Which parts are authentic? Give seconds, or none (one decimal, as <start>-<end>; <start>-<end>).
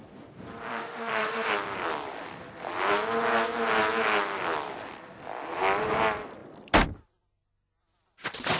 0.0-0.7; 1.5-8.6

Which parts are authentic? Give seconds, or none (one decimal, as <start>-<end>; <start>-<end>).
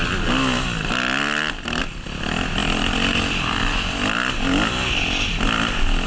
0.0-6.1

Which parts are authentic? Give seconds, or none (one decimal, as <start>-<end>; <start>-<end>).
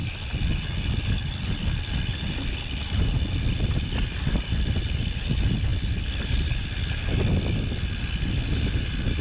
0.0-9.2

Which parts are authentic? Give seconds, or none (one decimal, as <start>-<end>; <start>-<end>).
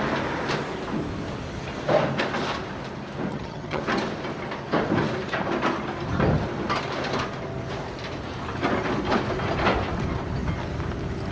0.0-3.3; 3.8-11.3